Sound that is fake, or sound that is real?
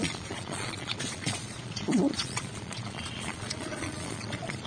fake